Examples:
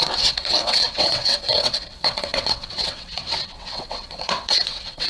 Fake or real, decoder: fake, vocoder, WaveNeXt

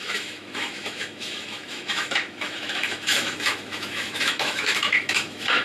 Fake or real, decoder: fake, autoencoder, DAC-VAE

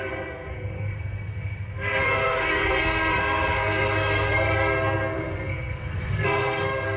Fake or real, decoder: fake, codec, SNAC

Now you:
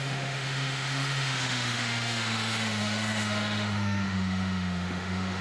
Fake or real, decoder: fake, autoencoder, DAC-VAE